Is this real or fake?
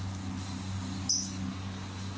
real